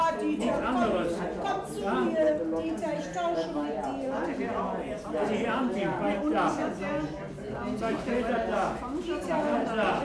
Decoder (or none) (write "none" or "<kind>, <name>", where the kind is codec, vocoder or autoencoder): none